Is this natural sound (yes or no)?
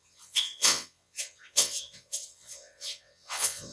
no